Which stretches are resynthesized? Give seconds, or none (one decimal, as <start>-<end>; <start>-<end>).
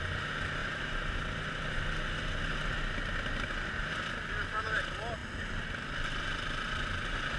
0.6-1.8